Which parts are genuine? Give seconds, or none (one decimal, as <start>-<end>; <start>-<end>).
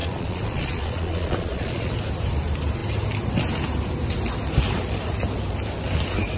1.9-6.4